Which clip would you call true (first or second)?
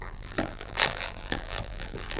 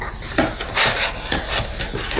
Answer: second